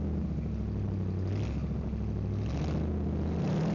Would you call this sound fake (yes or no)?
no